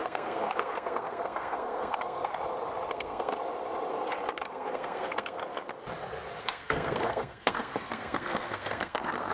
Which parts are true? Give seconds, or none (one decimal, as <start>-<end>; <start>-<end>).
2.3-2.9; 3.3-4.5; 5.4-6.4